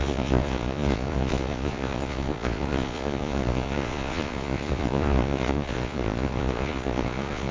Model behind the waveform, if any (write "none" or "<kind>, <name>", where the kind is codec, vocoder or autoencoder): vocoder, Vocos